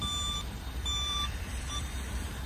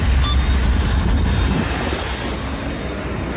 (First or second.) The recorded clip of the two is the second